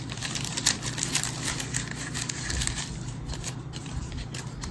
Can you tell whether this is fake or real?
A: fake